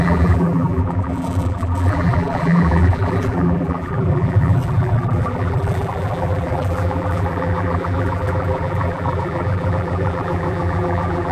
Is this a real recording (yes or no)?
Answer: no